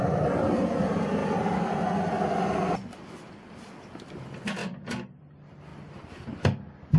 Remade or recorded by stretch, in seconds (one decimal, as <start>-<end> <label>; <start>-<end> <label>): 0.0-1.2 remade; 1.2-4.1 recorded; 4.1-4.6 remade; 4.6-5.2 recorded; 5.2-7.0 remade